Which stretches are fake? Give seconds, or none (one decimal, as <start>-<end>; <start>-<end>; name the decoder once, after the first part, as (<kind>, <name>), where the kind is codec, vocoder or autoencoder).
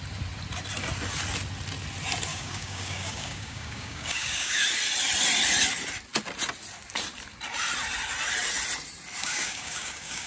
2.3-4.6 (codec, DAC); 9.2-10.3